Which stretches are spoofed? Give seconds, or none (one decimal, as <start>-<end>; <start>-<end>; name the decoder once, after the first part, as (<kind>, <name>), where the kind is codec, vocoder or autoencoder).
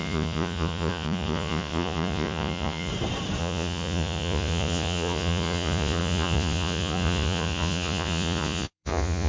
0.0-2.9 (vocoder, Vocos); 3.4-9.3